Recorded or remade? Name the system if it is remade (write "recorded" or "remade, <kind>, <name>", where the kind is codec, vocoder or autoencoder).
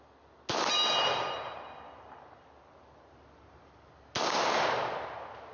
recorded